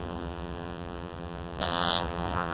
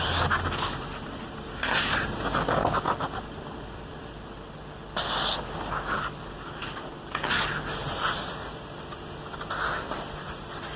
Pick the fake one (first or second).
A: first